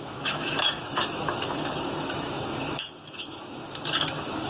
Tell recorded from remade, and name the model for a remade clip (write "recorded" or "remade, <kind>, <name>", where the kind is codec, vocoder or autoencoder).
remade, autoencoder, DAC-VAE